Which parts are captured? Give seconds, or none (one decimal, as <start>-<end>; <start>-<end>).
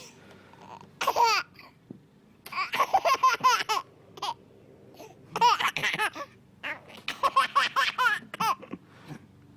0.0-5.8; 6.7-9.6